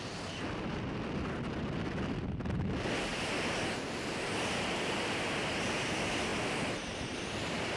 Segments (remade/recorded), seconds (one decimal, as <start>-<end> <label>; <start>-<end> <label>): 0.0-7.8 recorded